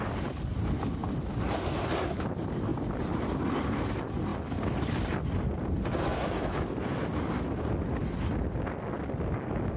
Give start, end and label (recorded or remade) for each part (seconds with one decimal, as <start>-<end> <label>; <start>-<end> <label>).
0.0-9.8 recorded